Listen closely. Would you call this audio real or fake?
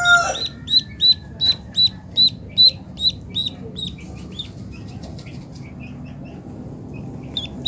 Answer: real